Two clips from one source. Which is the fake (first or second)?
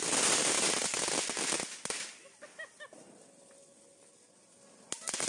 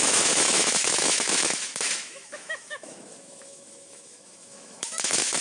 second